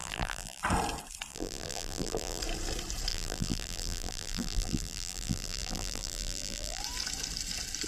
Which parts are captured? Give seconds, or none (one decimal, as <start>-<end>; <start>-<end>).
0.6-1.3; 2.4-3.1; 6.8-7.9